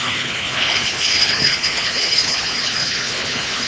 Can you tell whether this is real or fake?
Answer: fake